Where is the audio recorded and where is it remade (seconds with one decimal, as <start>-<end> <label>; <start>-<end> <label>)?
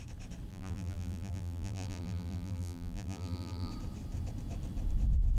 0.0-0.5 recorded; 0.5-3.7 remade; 3.7-5.4 recorded